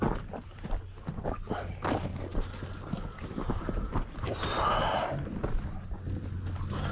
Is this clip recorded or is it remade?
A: recorded